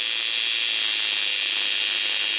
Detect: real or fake real